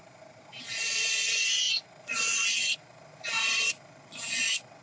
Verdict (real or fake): fake